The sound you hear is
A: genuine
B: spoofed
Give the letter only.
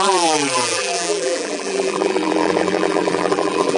B